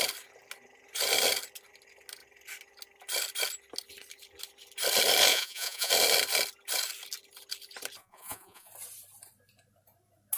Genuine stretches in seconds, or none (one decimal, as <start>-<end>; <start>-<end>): 0.0-5.3; 5.9-8.0; 8.7-10.4